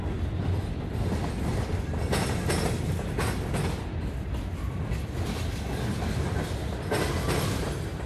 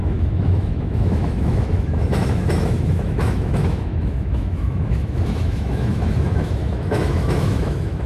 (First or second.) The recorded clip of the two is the first